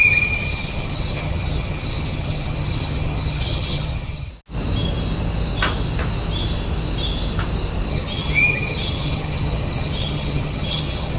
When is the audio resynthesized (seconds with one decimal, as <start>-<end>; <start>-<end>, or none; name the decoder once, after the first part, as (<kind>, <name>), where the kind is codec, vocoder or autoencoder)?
0.0-4.3 (vocoder, HiFi-GAN); 7.9-11.2